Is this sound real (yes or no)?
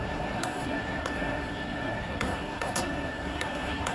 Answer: no